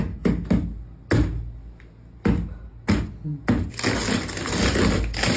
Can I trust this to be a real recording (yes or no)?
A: yes